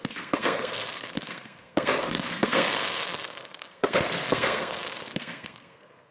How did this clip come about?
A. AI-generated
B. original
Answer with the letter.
A